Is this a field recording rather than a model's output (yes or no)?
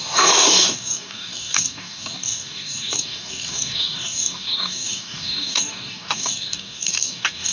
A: no